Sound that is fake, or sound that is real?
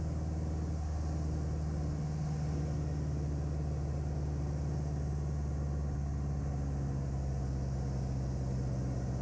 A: real